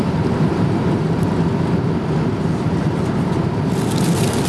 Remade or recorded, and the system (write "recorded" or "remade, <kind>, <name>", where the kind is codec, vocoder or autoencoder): recorded